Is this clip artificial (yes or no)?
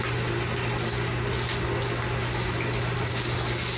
no